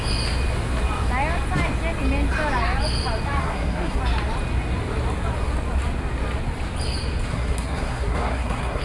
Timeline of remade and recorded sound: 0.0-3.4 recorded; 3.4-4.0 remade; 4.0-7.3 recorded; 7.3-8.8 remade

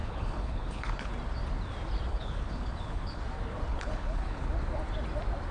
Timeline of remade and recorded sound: 0.0-1.1 remade; 1.1-2.1 recorded; 2.1-3.2 remade; 3.2-3.7 recorded; 3.7-4.5 remade; 4.5-5.5 recorded

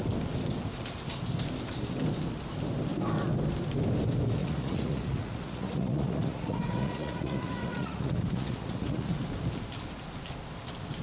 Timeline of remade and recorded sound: 0.0-4.4 recorded; 4.4-9.2 remade; 9.2-11.0 recorded

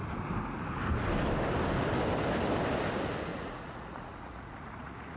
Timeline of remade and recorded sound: 0.0-3.3 recorded; 3.3-5.2 remade